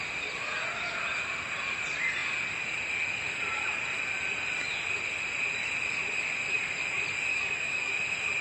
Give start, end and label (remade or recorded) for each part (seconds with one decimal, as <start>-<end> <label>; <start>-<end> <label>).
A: 0.0-7.3 recorded; 7.3-7.9 remade; 7.9-8.4 recorded